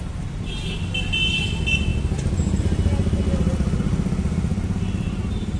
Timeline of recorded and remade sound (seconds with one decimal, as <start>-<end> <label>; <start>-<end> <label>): 0.0-5.6 recorded